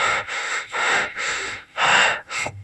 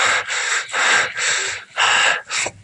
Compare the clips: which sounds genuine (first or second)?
second